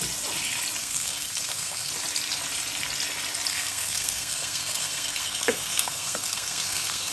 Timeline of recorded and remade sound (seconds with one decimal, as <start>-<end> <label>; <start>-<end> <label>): 0.0-0.8 recorded; 0.8-1.9 remade; 1.9-3.5 recorded; 3.5-7.1 remade